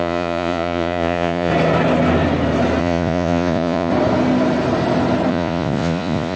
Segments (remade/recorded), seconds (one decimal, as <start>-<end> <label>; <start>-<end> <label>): 0.0-1.5 remade; 1.5-2.8 recorded; 2.8-3.9 remade; 3.9-5.3 recorded; 5.3-6.4 remade